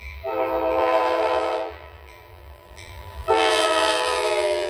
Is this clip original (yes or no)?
no